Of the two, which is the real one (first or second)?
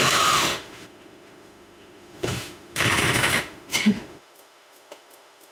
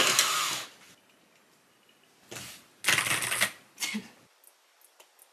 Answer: second